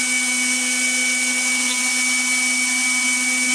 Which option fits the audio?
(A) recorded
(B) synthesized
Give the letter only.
A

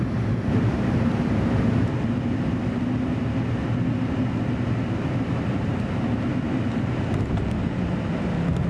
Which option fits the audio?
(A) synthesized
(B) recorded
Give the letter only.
B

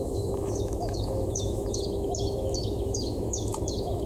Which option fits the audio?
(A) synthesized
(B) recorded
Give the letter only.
A